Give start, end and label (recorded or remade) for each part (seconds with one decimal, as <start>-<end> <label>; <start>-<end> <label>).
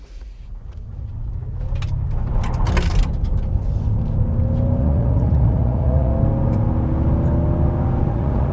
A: 0.0-1.1 remade; 1.1-4.8 recorded; 4.8-6.1 remade; 6.1-8.1 recorded; 8.1-8.5 remade